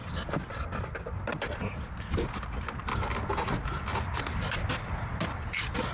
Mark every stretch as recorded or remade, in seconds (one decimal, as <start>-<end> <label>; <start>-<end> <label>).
0.0-5.9 recorded